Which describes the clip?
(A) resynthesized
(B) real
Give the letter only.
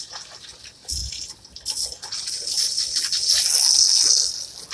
B